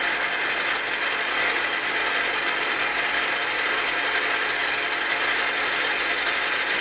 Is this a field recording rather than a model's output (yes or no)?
yes